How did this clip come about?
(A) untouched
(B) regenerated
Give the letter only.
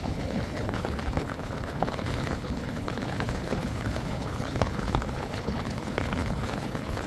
B